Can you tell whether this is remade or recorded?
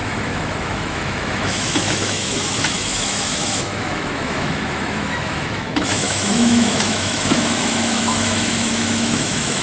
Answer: remade